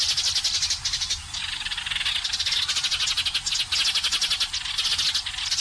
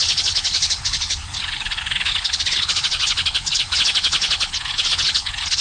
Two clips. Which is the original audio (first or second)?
first